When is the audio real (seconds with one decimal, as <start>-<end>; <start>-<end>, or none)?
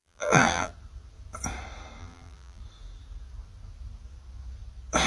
0.7-2.0; 2.6-5.1